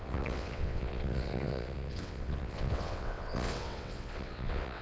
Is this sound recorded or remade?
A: remade